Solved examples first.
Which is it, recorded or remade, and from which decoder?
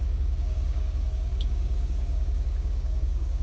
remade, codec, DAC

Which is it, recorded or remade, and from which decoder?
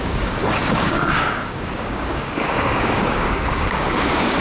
remade, codec, DAC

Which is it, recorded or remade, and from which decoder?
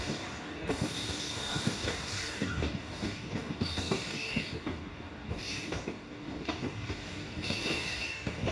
remade, codec, DAC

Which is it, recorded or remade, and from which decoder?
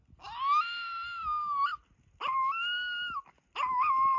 recorded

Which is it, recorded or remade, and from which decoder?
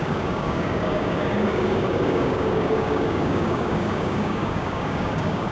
remade, codec, DAC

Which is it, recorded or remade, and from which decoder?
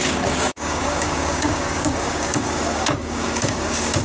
remade, codec, DAC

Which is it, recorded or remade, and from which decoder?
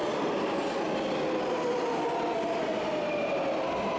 recorded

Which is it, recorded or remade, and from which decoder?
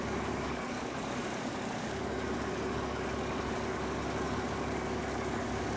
remade, codec, DAC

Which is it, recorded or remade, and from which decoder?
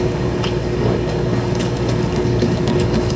remade, codec, DAC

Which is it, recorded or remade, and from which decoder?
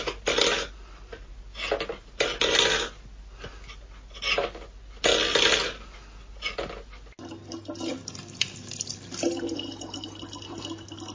recorded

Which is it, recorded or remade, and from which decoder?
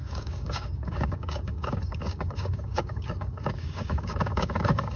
remade, codec, DAC